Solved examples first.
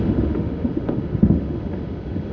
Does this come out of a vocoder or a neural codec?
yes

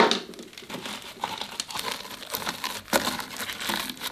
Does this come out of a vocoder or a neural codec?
no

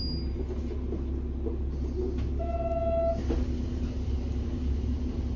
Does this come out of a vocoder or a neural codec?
no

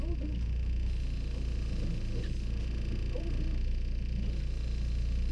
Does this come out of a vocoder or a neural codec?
no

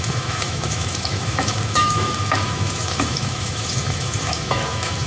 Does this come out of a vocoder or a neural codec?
yes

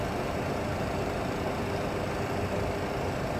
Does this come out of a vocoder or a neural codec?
no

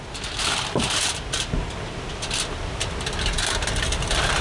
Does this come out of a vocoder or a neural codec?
no